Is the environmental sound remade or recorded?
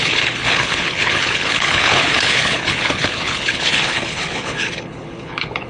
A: remade